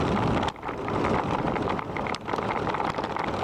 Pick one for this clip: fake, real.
real